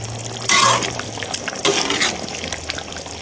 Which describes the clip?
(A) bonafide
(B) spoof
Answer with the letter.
A